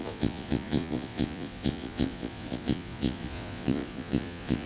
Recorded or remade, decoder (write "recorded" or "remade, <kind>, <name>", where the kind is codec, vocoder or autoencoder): remade, vocoder, Vocos